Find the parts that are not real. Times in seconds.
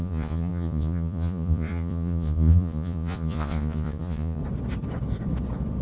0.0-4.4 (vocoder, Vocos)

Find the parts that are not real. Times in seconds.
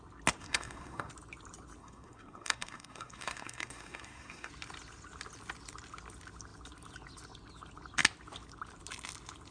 0.4-1.1 (codec, SNAC); 1.8-4.5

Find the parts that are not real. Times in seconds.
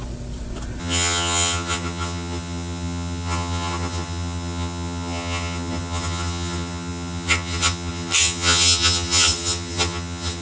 0.8-10.4 (vocoder, HiFi-GAN)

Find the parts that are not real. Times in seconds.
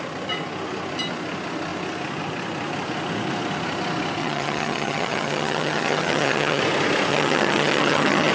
4.2-6.6 (vocoder, HiFi-GAN); 7.1-8.3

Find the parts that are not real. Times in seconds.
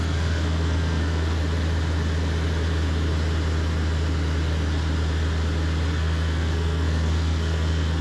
0.0-1.4 (codec, SNAC); 5.9-8.0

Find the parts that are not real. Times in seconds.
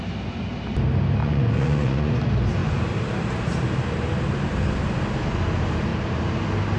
1.2-2.1 (vocoder, Vocos)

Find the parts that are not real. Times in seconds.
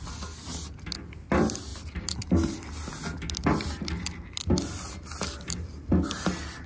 1.7-2.9 (vocoder, BigVGAN v2)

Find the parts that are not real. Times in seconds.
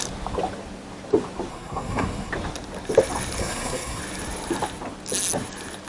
1.5-2.3 (codec, SNAC); 3.4-4.0